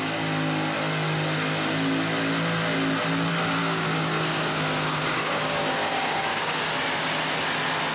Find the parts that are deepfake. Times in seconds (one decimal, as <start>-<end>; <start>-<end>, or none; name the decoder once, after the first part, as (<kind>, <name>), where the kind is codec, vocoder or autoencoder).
3.6-6.6 (codec, DAC)